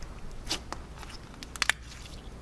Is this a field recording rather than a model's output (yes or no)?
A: yes